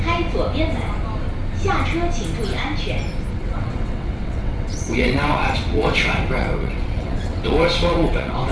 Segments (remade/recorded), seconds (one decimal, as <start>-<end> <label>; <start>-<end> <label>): 0.0-3.3 recorded; 3.3-8.5 remade